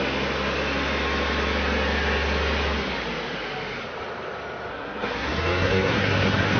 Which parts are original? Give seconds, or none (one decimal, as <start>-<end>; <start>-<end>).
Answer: 0.0-4.7